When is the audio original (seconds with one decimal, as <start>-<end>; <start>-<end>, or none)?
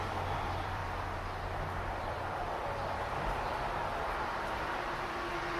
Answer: 0.8-2.0